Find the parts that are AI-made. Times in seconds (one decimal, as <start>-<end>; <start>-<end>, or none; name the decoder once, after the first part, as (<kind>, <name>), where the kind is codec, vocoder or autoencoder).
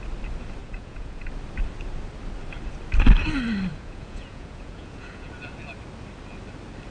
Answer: 0.6-1.3 (vocoder, Vocos); 3.7-5.3